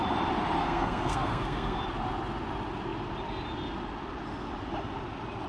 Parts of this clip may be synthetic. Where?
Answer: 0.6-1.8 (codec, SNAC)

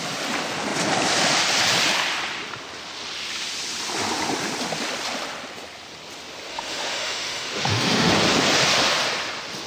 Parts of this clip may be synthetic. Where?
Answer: 6.5-8.1 (autoencoder, DAC-VAE)

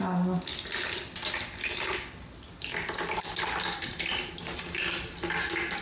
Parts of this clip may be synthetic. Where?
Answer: none

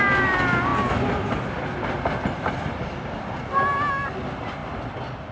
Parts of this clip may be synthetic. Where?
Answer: none

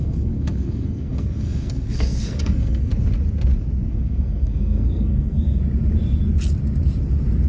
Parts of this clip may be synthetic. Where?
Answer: 0.0-2.9 (codec, SNAC); 3.9-5.6

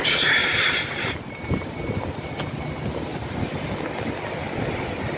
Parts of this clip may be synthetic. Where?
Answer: 0.4-1.7 (vocoder, BigVGAN v2); 3.1-3.7